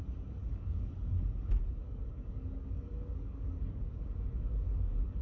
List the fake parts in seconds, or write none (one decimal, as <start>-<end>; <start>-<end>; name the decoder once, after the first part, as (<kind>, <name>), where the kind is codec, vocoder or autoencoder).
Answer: 0.4-0.9 (codec, DAC); 1.8-5.2